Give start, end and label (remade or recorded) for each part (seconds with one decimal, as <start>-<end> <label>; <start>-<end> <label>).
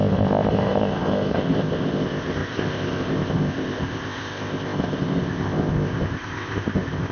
0.0-7.1 remade